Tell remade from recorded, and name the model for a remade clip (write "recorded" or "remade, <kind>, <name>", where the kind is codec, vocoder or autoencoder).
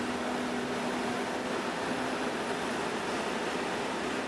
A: recorded